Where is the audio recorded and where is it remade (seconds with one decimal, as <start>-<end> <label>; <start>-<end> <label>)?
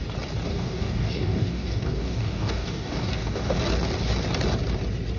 0.0-0.5 recorded; 0.5-3.6 remade; 3.6-5.2 recorded